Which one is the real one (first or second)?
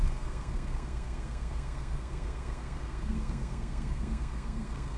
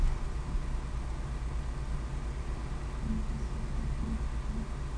second